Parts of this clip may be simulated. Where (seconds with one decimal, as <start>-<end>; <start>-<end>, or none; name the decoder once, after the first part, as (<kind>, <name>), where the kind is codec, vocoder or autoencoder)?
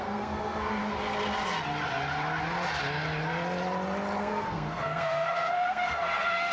0.0-0.8 (codec, SNAC); 4.2-6.5